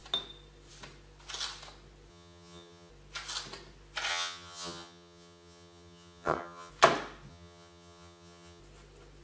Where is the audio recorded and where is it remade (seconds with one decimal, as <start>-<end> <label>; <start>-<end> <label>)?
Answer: 0.0-2.1 recorded; 2.1-2.9 remade; 2.9-4.1 recorded; 4.1-6.7 remade; 6.7-7.3 recorded; 7.3-8.6 remade; 8.6-9.2 recorded